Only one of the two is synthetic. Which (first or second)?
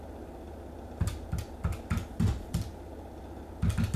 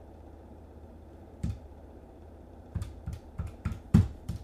second